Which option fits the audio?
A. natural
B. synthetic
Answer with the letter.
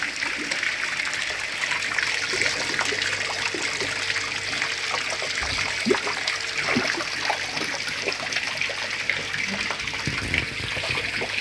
A